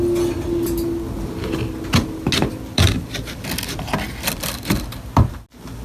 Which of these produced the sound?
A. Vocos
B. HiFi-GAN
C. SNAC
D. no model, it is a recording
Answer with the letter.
D